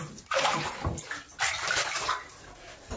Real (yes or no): yes